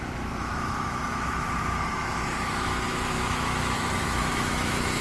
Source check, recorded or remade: remade